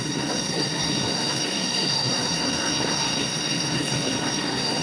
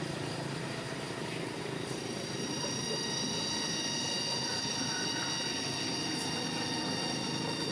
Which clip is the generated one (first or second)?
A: first